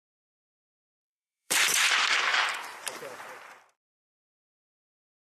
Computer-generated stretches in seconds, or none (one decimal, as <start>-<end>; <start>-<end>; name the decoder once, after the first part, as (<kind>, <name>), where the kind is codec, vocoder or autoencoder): 0.6-1.9 (vocoder, BigVGAN v2); 2.3-3.6